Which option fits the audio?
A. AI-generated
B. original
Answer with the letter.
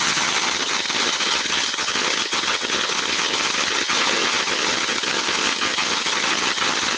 A